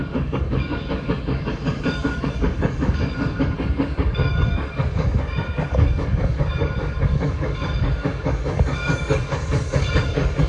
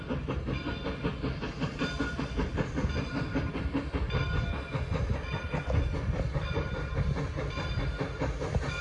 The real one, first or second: second